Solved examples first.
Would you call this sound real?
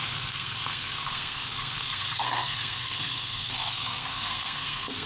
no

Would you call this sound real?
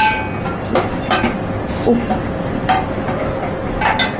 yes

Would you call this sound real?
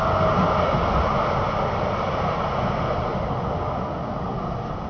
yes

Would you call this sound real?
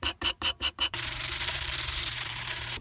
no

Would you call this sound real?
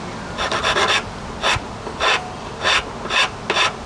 yes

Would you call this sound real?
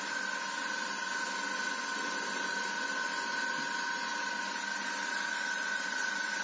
yes